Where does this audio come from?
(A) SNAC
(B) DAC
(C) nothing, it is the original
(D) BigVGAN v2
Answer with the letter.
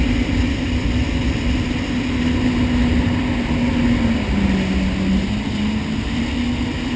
C